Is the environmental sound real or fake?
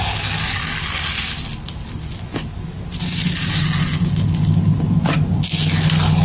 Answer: real